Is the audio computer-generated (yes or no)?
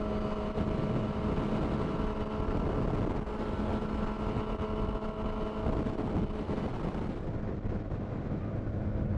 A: no